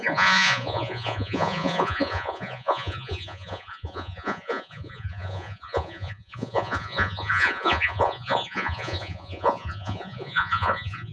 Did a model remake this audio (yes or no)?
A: yes